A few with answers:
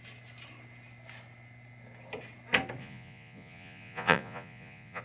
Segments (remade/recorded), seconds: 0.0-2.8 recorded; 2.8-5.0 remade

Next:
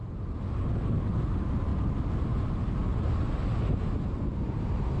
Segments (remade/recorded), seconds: 0.0-5.0 recorded

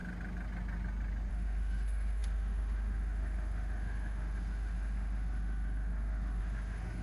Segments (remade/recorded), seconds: 0.0-1.3 recorded; 1.3-7.0 remade

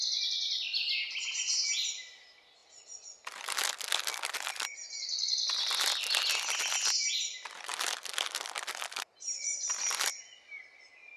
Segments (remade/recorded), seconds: 0.0-11.2 recorded

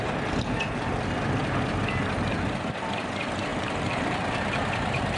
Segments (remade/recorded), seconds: 0.0-3.5 recorded; 3.5-5.2 remade